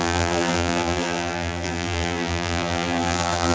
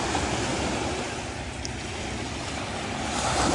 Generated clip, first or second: first